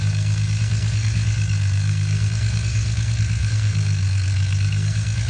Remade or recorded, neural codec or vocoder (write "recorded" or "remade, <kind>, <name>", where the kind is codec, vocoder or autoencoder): remade, codec, SNAC